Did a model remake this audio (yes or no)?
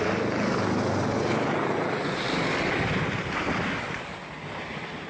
no